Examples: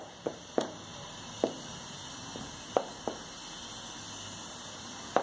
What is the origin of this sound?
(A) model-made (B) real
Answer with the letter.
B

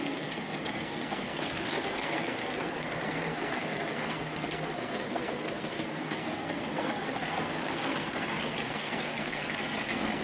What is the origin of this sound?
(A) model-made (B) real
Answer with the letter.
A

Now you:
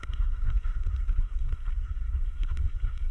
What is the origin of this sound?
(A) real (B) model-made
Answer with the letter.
B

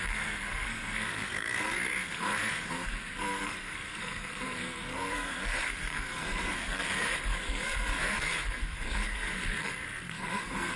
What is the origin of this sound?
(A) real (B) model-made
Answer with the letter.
B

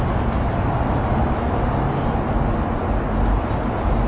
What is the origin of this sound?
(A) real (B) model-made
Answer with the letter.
A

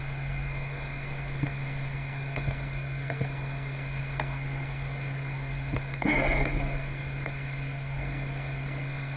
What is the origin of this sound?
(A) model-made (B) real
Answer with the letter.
A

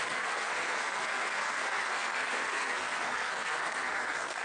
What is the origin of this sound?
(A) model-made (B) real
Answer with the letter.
A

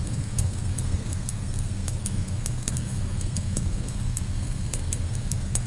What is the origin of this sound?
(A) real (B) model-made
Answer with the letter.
B